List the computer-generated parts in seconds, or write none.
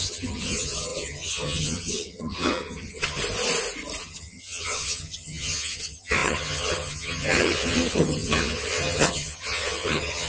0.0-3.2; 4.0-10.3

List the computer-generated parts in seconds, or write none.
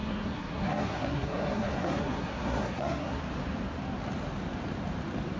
0.0-3.2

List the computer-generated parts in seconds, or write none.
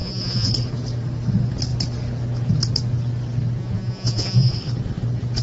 0.0-0.5; 3.6-4.5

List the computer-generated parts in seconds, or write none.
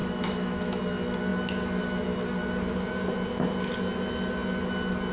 0.0-0.8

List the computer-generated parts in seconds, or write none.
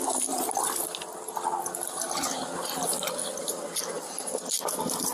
0.0-0.8; 3.4-5.1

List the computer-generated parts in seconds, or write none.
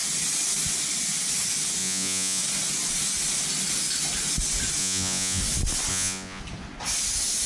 1.8-2.4; 4.8-5.4; 5.9-6.4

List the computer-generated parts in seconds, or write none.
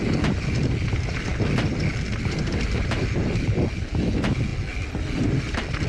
0.0-5.9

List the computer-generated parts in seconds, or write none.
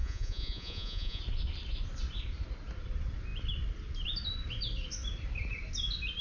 0.0-1.2